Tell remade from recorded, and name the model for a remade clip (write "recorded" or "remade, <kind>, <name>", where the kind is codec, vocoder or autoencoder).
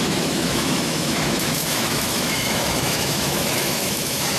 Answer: remade, autoencoder, DAC-VAE